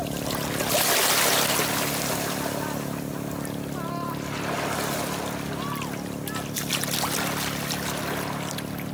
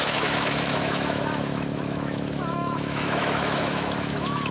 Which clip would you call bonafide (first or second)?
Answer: first